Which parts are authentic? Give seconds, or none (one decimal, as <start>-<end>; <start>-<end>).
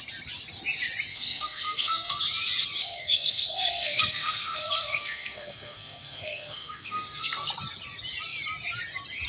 0.0-1.1; 2.2-2.8; 7.5-9.3